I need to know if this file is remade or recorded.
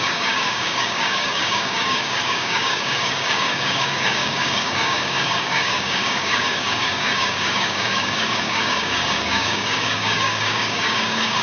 remade